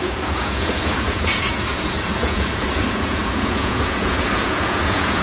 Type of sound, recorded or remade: remade